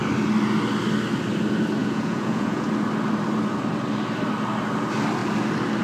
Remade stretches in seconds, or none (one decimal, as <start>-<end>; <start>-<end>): 1.8-2.7